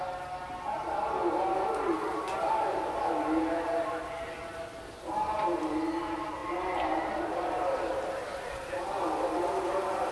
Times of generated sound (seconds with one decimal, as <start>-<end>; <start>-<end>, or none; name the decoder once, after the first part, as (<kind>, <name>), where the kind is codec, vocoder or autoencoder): none